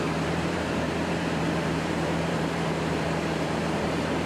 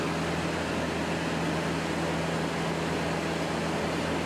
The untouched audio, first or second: second